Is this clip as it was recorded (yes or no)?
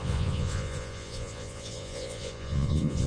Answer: no